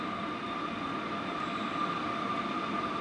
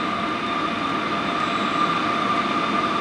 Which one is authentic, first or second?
second